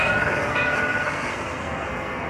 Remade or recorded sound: remade